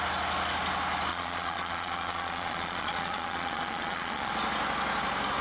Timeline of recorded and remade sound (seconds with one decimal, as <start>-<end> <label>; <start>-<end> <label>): 0.0-1.1 recorded; 1.1-4.3 remade; 4.3-5.4 recorded